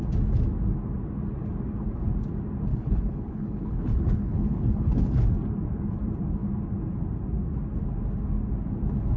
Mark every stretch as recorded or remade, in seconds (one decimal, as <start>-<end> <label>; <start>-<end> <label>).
0.0-2.7 recorded; 2.7-4.9 remade; 4.9-9.2 recorded